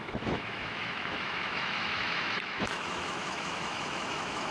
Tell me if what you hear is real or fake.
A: fake